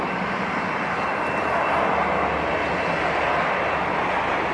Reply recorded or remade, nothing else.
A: recorded